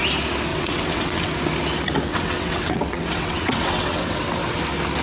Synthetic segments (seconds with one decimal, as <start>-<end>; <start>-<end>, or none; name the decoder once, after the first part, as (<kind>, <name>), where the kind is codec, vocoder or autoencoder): 0.5-1.3 (vocoder, WaveNeXt); 2.1-4.6